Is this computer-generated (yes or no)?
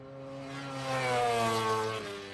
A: no